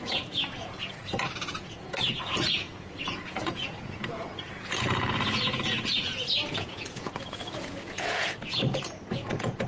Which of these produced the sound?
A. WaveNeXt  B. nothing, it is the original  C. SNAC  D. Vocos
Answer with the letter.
D